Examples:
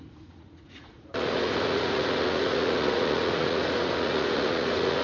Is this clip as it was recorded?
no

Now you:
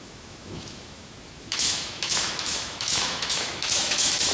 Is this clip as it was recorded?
no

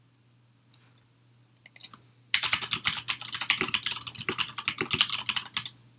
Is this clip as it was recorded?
yes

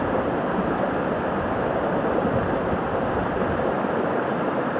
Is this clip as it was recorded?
yes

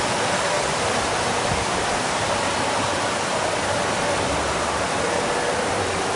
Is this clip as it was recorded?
no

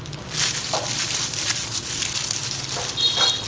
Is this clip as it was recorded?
yes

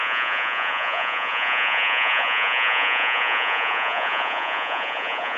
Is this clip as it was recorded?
no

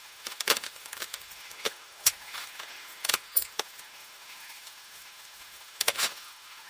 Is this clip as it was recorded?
no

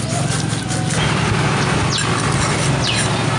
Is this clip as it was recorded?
yes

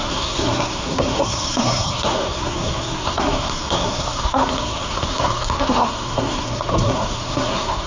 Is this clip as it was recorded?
no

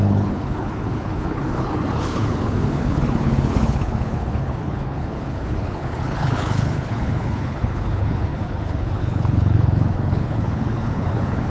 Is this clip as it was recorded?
no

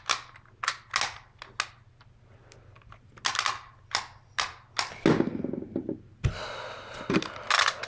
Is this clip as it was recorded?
yes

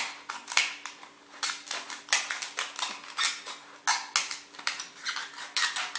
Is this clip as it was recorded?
yes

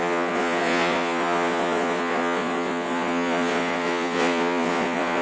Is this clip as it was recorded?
no